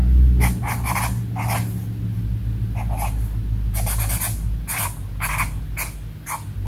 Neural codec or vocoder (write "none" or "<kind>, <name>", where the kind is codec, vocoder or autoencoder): none